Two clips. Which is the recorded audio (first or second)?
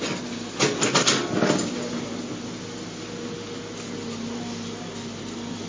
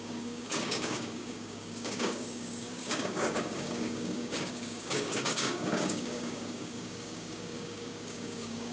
first